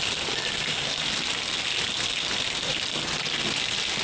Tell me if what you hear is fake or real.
real